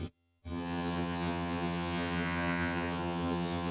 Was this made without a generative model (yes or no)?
no